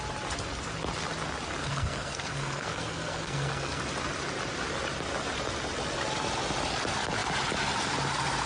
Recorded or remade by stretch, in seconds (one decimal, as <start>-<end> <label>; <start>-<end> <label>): 0.0-1.6 recorded; 1.6-3.8 remade; 3.8-8.5 recorded